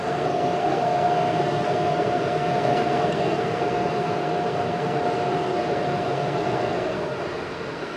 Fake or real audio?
fake